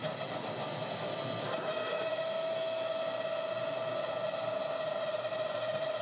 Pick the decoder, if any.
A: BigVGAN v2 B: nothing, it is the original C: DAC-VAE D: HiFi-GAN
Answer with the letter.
B